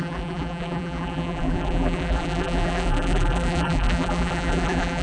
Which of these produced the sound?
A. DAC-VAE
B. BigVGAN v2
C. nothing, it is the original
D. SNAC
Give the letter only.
B